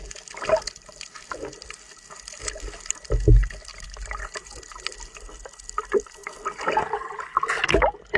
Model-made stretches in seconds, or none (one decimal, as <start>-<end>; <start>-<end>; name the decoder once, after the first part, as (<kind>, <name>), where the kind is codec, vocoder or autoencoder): 3.7-4.5 (vocoder, BigVGAN v2)